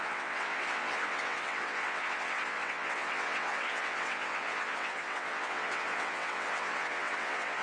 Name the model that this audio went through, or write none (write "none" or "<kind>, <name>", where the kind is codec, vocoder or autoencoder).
vocoder, WaveNeXt